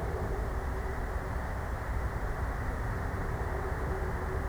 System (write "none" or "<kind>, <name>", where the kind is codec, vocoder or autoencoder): vocoder, BigVGAN v2